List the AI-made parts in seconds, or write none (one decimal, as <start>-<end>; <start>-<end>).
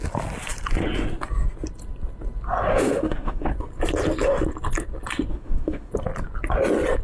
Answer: 2.7-3.5; 5.3-5.9